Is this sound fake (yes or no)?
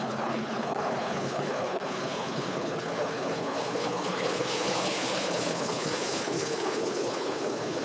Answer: yes